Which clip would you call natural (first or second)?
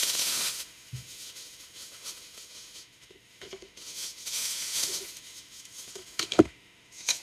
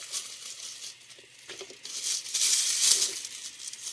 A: second